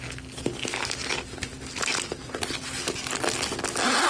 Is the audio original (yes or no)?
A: yes